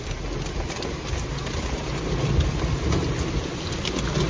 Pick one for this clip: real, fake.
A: real